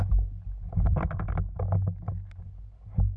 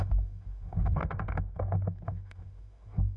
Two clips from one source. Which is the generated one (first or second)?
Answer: second